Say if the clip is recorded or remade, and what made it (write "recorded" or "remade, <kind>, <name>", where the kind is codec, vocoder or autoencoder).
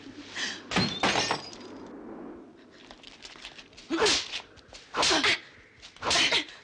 recorded